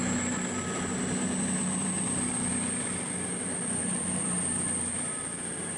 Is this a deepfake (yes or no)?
no